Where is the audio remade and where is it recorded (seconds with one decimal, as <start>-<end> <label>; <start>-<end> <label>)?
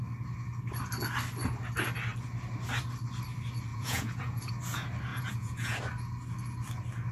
0.0-3.7 recorded; 3.7-4.5 remade; 4.5-5.1 recorded; 5.1-5.8 remade; 5.8-7.1 recorded